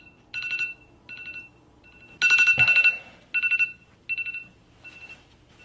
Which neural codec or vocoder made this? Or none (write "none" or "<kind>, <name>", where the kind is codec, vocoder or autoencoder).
none